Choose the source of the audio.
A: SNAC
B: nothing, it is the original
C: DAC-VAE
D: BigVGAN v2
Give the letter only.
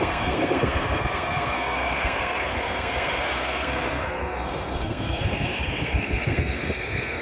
A